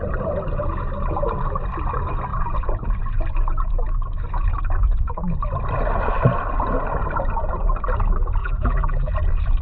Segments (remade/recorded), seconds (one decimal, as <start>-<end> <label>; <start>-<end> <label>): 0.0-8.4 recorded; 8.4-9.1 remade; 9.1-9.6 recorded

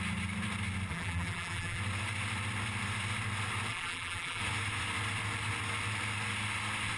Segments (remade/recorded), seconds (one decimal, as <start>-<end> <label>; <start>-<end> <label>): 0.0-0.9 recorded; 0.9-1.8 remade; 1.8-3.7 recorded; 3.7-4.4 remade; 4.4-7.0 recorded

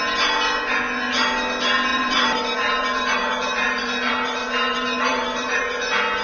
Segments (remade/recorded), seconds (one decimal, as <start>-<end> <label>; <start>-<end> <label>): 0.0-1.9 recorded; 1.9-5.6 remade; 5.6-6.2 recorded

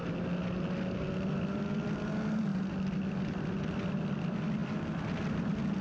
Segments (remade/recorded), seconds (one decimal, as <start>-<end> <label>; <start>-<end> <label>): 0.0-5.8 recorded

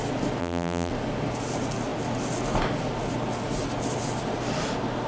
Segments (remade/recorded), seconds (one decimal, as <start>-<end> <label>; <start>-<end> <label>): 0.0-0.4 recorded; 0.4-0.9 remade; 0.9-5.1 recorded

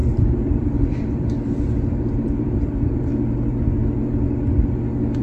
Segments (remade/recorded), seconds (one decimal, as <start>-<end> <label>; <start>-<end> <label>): 0.0-3.1 remade; 3.1-5.2 recorded

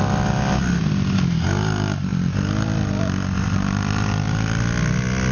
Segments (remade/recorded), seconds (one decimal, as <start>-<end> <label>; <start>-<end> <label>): 0.0-2.1 recorded; 2.1-4.6 remade; 4.6-5.3 recorded

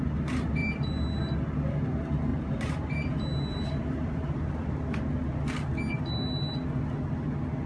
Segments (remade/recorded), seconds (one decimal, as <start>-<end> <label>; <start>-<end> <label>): 0.0-0.6 recorded; 0.6-1.2 remade; 1.2-2.3 recorded; 2.3-4.7 remade; 4.7-7.7 recorded